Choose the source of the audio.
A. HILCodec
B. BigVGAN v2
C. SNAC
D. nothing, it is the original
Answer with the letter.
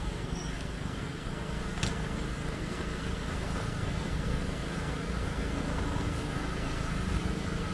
C